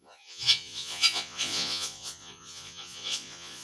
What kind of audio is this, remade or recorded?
remade